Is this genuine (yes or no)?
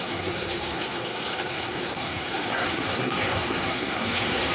no